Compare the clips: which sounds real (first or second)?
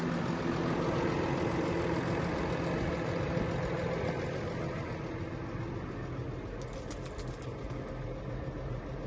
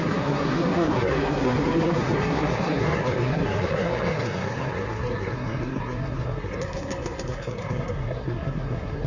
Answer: first